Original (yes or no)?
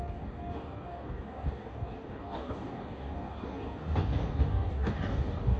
no